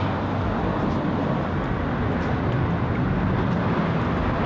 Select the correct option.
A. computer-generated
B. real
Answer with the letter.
B